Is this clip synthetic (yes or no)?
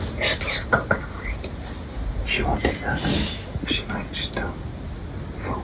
no